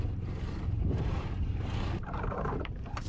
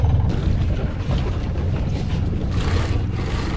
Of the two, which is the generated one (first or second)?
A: first